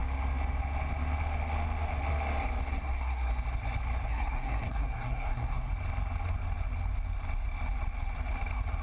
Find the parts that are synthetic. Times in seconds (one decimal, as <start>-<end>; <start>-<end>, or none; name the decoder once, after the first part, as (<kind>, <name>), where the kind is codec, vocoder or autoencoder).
2.7-3.3 (codec, SNAC); 4.1-5.7